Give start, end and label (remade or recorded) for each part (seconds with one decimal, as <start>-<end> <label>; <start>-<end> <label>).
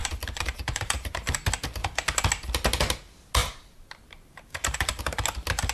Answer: 0.0-1.4 remade; 1.4-3.4 recorded; 3.4-5.0 remade; 5.0-5.7 recorded